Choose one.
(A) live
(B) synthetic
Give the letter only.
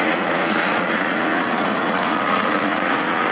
B